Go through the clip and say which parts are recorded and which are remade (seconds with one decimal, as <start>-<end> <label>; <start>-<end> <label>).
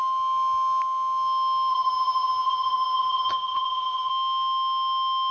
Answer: 0.0-1.7 recorded; 1.7-4.1 remade; 4.1-5.3 recorded